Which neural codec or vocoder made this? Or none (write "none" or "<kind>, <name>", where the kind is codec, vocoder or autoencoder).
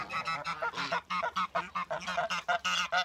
none